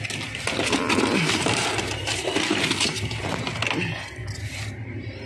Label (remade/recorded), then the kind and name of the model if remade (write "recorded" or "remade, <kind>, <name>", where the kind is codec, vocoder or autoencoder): recorded